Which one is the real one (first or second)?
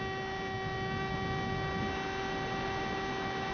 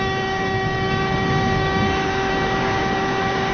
first